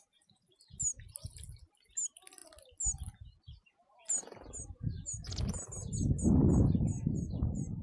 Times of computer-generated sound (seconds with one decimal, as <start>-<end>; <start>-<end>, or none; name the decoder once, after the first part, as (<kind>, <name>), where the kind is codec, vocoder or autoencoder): none